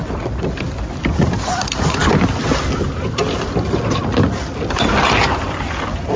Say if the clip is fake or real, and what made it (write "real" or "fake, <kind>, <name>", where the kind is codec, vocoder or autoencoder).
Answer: real